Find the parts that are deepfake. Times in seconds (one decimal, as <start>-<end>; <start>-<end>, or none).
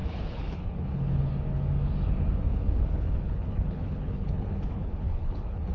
0.0-1.3; 2.5-5.7